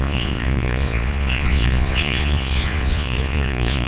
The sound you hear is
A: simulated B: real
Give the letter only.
A